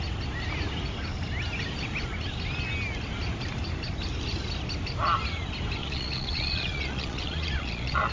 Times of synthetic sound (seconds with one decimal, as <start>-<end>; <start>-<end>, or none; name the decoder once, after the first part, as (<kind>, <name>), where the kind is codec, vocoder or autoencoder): 5.8-8.1 (vocoder, Vocos)